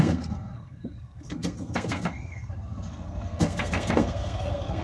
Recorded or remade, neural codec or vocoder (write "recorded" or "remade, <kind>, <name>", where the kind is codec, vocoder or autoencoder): remade, codec, SNAC